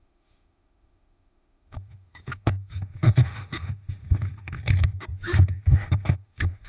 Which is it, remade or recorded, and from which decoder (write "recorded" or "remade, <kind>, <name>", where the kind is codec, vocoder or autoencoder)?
remade, autoencoder, DAC-VAE